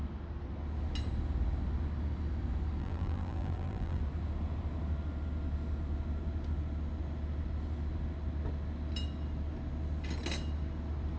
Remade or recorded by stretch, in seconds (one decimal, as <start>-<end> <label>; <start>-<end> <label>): 0.0-2.8 recorded; 2.8-4.0 remade; 4.0-11.2 recorded

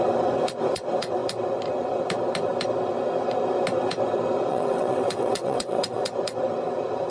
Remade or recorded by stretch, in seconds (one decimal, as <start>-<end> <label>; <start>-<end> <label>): 0.0-4.5 recorded; 4.5-6.0 remade; 6.0-7.1 recorded

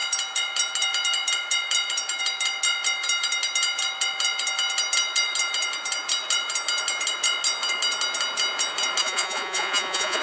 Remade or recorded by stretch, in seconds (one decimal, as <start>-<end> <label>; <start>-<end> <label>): 0.0-9.0 recorded; 9.0-10.2 remade